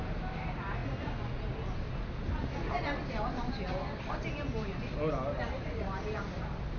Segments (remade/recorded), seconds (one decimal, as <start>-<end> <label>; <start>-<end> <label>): 0.0-6.8 recorded